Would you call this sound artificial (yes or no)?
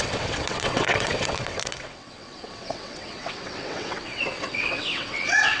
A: yes